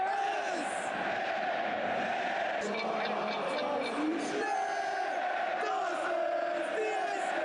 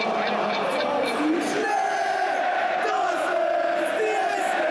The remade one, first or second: second